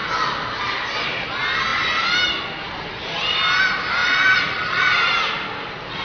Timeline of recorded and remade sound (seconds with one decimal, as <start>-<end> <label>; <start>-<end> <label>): 0.0-4.0 recorded; 4.0-5.0 remade; 5.0-6.0 recorded